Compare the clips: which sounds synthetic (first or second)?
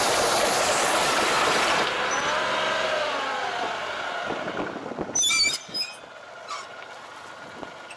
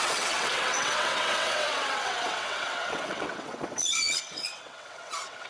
second